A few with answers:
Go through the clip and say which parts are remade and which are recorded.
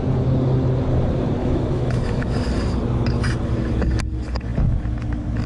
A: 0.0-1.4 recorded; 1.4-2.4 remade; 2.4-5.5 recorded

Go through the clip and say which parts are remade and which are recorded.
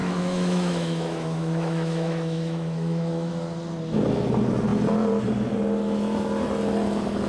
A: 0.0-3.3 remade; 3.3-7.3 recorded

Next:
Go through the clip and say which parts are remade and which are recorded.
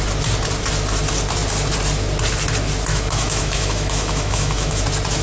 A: 0.0-2.9 recorded; 2.9-4.8 remade; 4.8-5.2 recorded